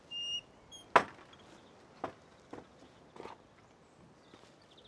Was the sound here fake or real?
real